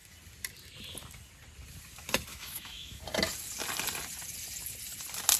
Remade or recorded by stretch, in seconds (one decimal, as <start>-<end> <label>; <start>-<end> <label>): 0.0-2.3 recorded; 2.3-3.0 remade; 3.0-5.4 recorded